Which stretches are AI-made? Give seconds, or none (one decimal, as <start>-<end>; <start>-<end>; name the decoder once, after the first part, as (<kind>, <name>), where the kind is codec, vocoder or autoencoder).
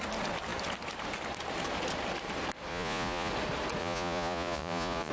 2.7-3.3 (vocoder, Vocos); 3.8-5.1